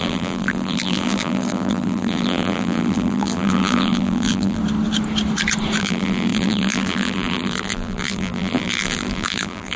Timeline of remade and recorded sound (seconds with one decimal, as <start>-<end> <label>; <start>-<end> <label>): 0.0-4.6 remade; 4.6-5.8 recorded; 5.8-9.8 remade